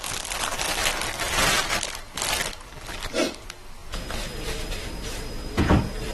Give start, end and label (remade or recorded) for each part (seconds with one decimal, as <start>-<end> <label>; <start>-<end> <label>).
0.0-3.8 recorded; 3.8-6.1 remade